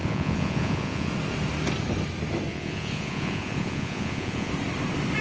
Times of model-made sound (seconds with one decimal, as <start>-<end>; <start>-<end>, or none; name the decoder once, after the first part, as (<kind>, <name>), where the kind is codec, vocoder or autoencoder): 0.0-1.1 (vocoder, Vocos); 2.5-4.5